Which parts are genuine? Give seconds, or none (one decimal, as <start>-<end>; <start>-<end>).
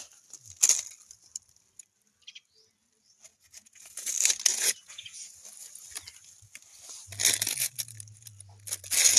0.0-3.3; 4.1-4.5; 5.3-9.2